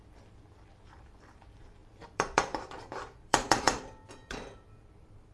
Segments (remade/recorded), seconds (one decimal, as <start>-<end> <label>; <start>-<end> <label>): 0.0-1.8 recorded; 1.8-5.3 remade